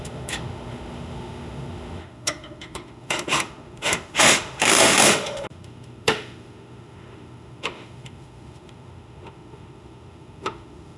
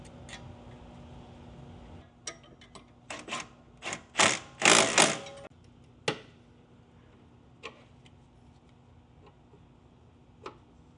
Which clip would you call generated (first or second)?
first